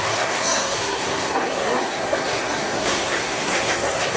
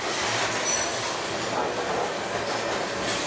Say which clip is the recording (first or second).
second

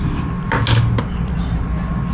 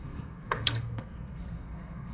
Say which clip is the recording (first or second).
first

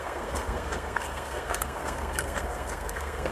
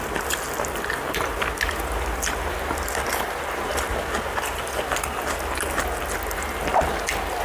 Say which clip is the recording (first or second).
second